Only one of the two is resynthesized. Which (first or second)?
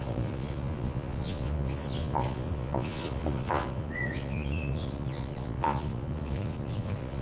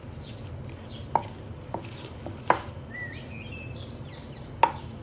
first